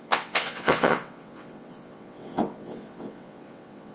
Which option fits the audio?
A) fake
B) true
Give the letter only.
A